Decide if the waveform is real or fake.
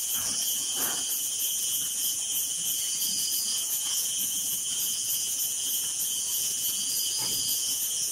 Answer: fake